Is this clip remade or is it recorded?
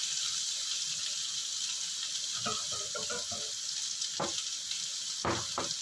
recorded